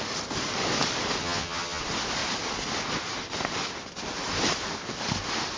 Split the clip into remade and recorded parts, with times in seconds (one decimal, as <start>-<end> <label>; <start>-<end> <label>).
0.0-1.2 recorded; 1.2-1.8 remade; 1.8-5.6 recorded